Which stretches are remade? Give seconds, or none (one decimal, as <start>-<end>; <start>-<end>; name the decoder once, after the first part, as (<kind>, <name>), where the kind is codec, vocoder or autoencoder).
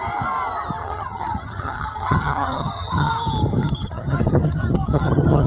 0.8-3.1 (vocoder, HiFi-GAN); 3.6-5.5